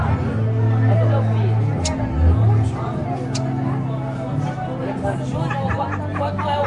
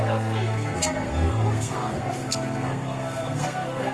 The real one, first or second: first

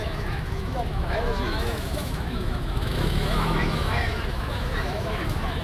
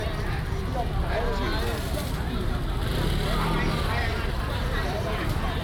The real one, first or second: second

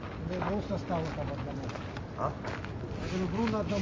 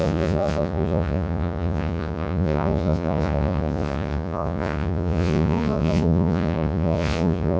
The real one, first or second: first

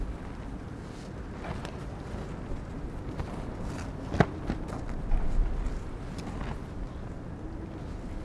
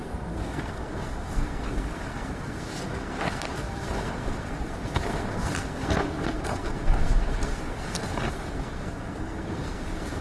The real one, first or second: first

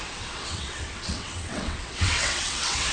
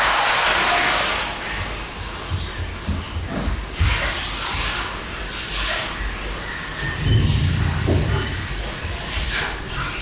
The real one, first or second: second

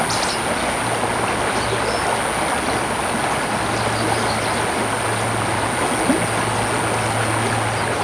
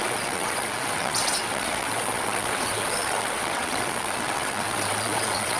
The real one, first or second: first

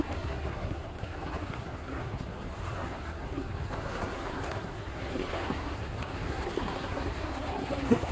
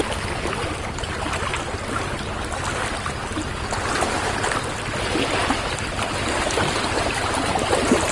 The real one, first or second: second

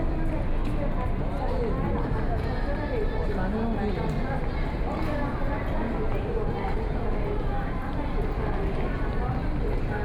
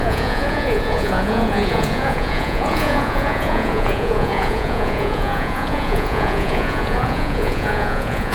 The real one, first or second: first